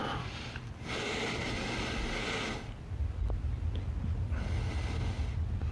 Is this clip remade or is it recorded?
recorded